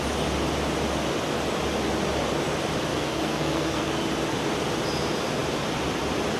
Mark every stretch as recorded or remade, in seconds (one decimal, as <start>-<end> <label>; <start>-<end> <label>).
0.0-2.9 recorded; 2.9-3.9 remade; 3.9-6.4 recorded